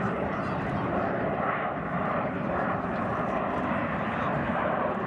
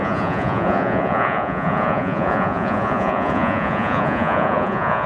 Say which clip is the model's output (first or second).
second